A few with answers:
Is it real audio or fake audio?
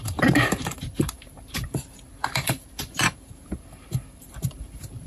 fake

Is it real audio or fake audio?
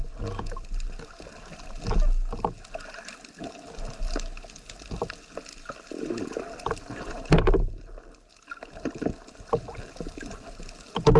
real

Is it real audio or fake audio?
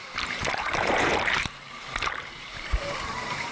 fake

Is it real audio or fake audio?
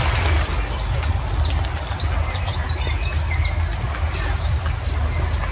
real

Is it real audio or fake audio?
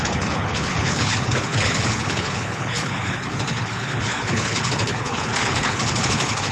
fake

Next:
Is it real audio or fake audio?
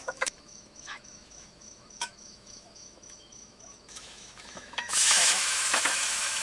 fake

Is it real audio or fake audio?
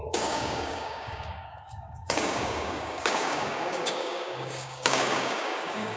fake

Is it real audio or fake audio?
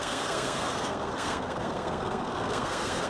fake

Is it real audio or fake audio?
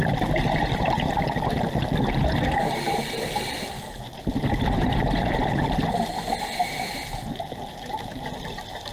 real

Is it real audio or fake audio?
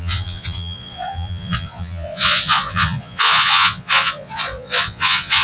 fake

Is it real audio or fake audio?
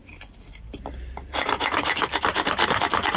fake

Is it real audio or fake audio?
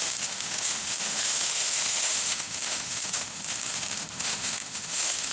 fake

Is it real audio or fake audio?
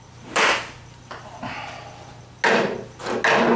real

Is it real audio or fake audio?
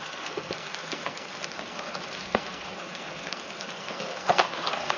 fake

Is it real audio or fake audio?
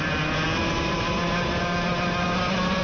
real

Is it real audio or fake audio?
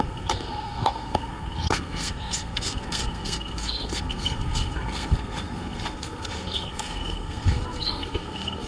fake